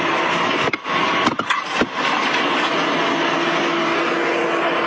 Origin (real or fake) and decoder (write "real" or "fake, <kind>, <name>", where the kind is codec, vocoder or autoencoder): real